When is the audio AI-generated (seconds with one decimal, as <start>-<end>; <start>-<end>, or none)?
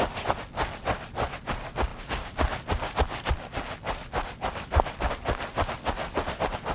none